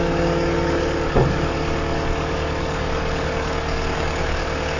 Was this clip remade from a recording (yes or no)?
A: yes